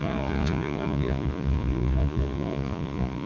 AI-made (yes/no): yes